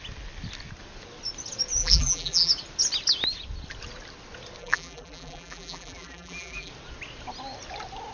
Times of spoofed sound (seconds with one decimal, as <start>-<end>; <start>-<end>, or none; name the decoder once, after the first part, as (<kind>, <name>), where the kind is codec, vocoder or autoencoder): 1.8-2.5 (vocoder, BigVGAN v2); 4.6-6.7